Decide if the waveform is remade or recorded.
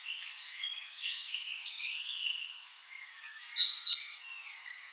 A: remade